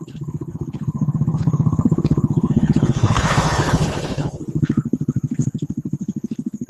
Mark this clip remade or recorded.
remade